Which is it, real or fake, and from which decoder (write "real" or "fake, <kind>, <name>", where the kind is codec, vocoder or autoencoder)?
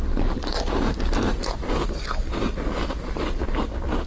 real